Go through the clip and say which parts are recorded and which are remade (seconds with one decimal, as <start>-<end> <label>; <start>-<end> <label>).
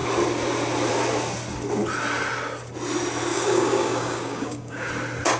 0.0-3.3 recorded; 3.3-4.9 remade; 4.9-5.4 recorded